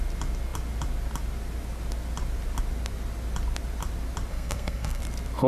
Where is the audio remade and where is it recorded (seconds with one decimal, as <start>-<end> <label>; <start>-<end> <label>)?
0.0-4.3 recorded; 4.3-5.0 remade; 5.0-5.5 recorded